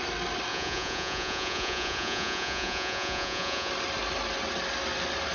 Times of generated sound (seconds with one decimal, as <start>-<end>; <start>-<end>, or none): 0.5-3.7